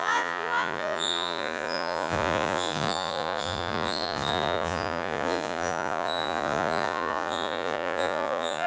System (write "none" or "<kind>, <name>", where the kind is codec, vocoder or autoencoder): vocoder, Vocos